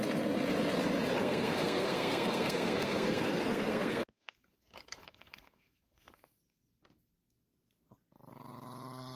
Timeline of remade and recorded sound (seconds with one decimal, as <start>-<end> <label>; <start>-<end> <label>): 0.0-1.2 recorded; 1.2-6.4 remade; 6.4-9.2 recorded